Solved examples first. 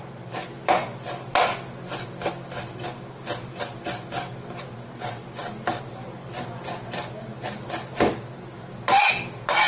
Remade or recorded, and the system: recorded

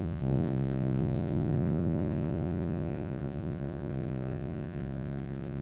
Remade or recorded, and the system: remade, vocoder, Vocos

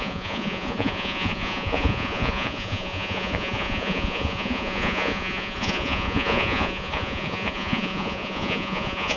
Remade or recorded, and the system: remade, vocoder, Vocos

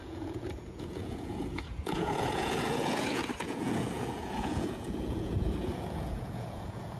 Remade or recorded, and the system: remade, vocoder, Vocos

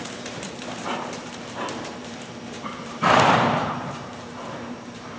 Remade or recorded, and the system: remade, vocoder, BigVGAN v2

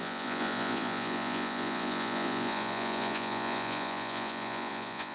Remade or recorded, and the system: remade, vocoder, Vocos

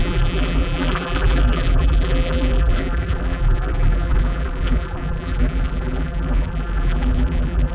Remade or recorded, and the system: remade, vocoder, BigVGAN v2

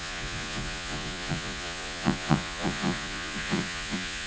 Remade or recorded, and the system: remade, vocoder, Vocos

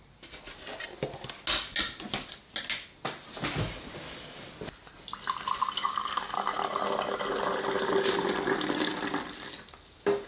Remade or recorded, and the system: recorded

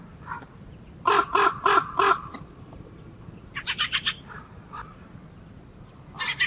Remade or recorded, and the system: recorded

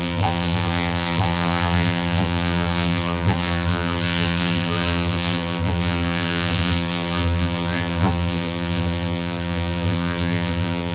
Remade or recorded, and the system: remade, vocoder, BigVGAN v2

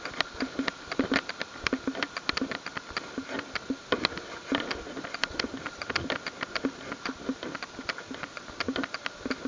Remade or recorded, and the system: recorded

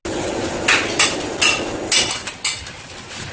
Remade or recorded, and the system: recorded